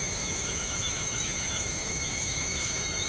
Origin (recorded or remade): remade